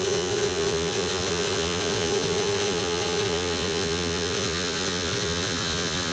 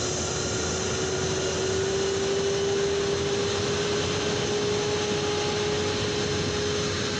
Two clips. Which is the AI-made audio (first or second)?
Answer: first